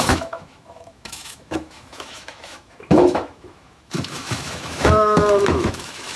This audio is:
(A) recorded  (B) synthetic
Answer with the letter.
B